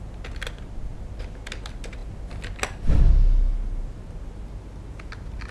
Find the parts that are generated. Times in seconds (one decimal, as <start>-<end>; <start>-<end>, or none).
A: none